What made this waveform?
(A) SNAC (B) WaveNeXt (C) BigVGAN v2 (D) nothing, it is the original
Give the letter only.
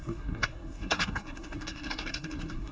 A